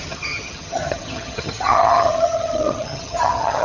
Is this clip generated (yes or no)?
yes